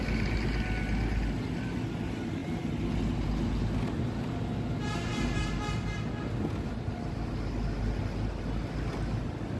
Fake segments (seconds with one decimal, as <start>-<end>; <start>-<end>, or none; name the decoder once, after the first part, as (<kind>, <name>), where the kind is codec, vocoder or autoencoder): none

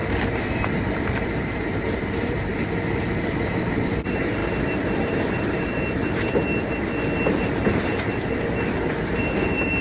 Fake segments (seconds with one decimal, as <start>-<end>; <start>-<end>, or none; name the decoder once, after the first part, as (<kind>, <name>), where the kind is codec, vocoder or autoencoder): 0.0-2.5 (vocoder, BigVGAN v2); 3.2-6.4; 7.6-9.8

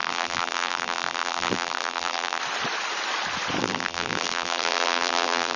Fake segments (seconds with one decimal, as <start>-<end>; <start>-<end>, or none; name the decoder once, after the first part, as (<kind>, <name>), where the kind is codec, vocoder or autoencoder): 0.0-2.4 (vocoder, BigVGAN v2); 3.6-5.6